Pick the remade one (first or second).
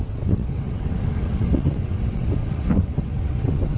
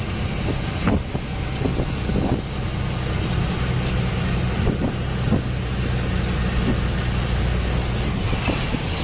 first